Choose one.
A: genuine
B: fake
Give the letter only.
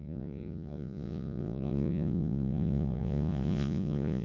B